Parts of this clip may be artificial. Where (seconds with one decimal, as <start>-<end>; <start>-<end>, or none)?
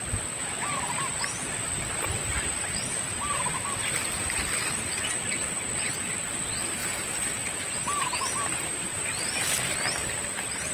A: 6.8-10.2